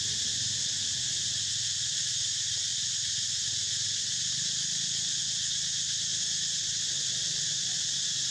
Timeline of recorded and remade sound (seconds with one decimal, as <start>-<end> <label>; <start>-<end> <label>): 0.0-8.3 recorded